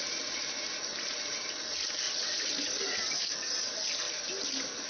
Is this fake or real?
real